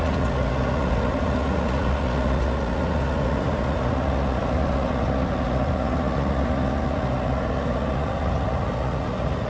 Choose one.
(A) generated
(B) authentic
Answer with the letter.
A